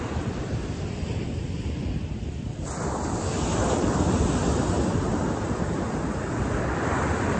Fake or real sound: fake